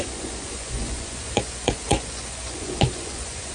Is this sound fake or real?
fake